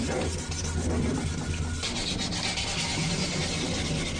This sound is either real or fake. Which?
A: real